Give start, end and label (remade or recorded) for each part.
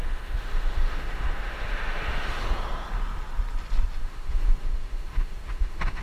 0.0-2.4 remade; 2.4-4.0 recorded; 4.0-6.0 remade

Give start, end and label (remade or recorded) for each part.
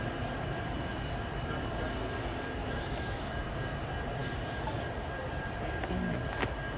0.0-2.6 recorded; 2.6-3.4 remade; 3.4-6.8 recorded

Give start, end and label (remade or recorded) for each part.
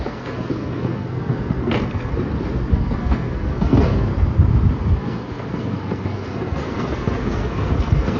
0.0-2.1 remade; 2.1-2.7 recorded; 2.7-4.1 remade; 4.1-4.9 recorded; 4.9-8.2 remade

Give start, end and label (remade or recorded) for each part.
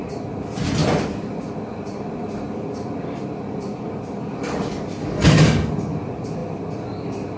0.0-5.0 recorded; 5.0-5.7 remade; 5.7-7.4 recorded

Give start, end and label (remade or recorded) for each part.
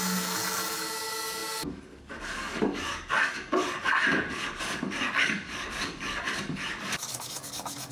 0.0-7.9 remade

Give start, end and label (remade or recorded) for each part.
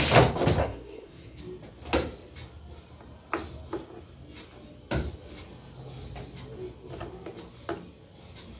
0.0-0.6 recorded; 0.6-1.4 remade; 1.4-8.6 recorded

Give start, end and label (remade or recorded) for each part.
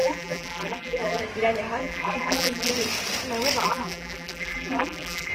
0.0-1.2 remade; 1.2-1.8 recorded; 1.8-2.7 remade; 2.7-3.6 recorded; 3.6-5.3 remade